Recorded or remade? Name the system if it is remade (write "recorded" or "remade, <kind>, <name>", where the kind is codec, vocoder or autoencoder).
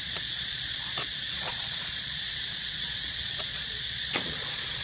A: remade, vocoder, Vocos